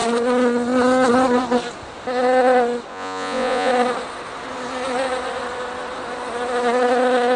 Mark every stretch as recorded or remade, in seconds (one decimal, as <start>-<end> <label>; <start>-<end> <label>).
0.0-2.9 recorded; 2.9-3.7 remade; 3.7-7.4 recorded